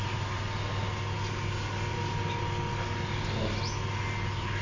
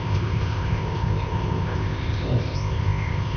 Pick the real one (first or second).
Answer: first